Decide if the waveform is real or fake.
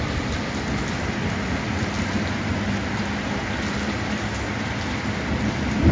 real